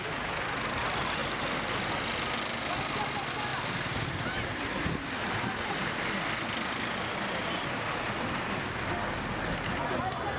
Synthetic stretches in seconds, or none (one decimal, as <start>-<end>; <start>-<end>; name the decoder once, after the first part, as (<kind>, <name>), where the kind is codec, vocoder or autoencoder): none

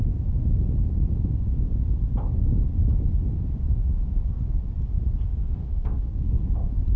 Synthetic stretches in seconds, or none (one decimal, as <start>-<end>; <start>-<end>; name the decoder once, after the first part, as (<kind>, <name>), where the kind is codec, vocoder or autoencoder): 5.3-6.5 (codec, SNAC)

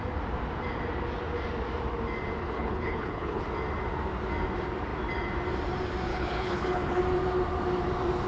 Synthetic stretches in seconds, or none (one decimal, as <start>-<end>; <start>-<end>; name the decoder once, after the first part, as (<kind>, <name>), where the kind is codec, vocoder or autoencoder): 2.4-3.4 (codec, HILCodec); 6.1-7.0

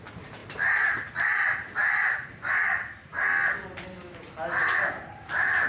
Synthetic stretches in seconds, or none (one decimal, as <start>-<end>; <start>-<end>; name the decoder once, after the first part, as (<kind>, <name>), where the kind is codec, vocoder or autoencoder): 0.4-1.1 (vocoder, BigVGAN v2); 4.6-5.7

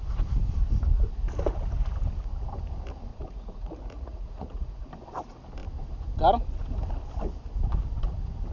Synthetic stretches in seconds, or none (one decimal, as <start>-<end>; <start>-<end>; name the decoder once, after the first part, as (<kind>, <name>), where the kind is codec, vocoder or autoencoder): 3.1-4.9 (vocoder, Vocos)

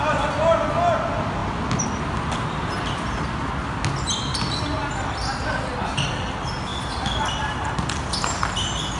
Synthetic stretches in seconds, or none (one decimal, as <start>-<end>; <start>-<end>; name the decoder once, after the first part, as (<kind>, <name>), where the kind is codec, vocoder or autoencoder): none

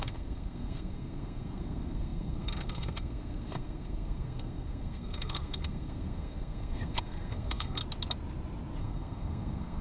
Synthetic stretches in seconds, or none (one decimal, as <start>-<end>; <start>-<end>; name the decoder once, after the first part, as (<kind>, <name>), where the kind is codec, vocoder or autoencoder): 0.0-7.8 (codec, SNAC); 8.8-9.8